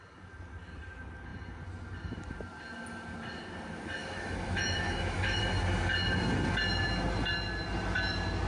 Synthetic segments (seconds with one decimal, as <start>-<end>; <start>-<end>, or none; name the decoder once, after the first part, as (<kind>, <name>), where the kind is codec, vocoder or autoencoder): 4.0-5.4 (autoencoder, DAC-VAE)